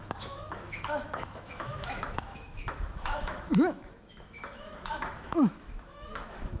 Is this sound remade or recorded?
remade